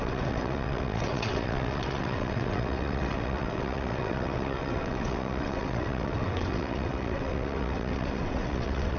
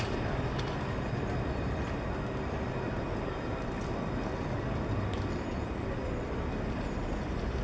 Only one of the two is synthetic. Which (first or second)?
first